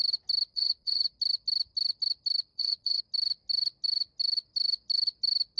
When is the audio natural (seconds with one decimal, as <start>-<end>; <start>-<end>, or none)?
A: 0.0-0.5; 1.1-2.5; 3.0-5.6

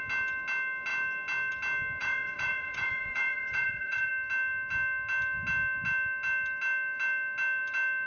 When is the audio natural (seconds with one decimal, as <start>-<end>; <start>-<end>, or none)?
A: 0.0-2.0; 4.1-8.1

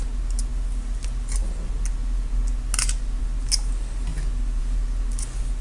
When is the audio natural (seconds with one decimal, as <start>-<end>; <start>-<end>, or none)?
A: 0.0-5.6

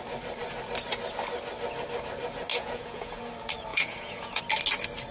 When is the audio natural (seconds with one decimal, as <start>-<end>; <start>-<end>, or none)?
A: 0.0-2.5; 3.2-3.7; 4.4-5.1

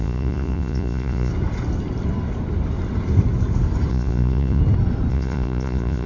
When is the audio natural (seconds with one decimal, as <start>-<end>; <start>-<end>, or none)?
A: 1.3-3.9; 4.6-5.1

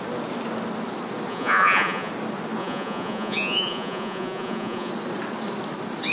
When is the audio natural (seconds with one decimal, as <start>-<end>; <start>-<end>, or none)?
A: 0.0-1.3; 2.1-2.6; 4.9-6.1